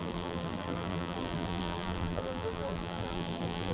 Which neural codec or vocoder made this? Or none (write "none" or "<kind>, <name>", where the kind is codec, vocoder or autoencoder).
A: vocoder, BigVGAN v2